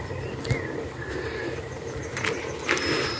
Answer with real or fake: real